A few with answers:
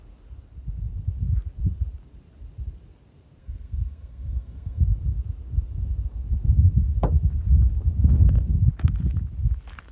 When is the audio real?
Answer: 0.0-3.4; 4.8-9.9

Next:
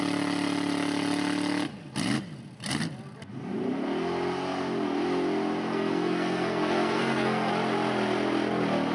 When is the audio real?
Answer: 0.0-5.7; 7.5-8.9

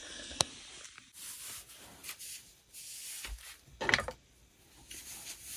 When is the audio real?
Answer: 0.5-5.6

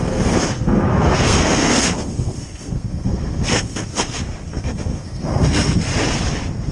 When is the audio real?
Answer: 3.9-4.5; 5.9-6.7

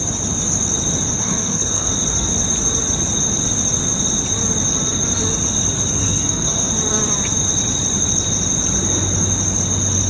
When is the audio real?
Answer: 0.0-1.2; 1.9-6.0; 6.7-10.1

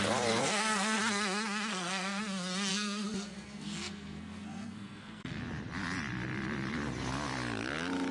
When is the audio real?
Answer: 0.0-0.4; 1.0-1.7; 2.2-2.7; 5.4-8.1

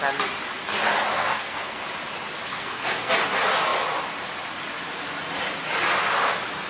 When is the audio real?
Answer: 0.0-1.1; 1.8-2.5; 3.1-6.7

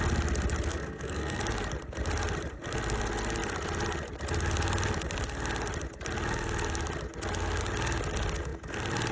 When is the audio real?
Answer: 0.0-0.7; 1.4-9.1